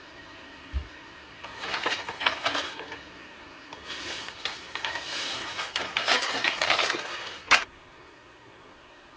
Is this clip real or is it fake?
fake